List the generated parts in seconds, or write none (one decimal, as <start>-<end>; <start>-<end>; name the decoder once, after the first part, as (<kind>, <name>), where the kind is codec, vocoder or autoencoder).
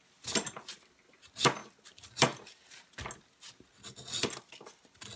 1.6-2.9 (vocoder, BigVGAN v2)